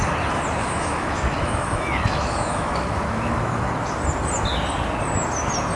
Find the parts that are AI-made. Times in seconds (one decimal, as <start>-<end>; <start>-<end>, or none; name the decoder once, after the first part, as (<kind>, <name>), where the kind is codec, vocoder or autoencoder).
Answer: 0.6-3.7 (autoencoder, DAC-VAE)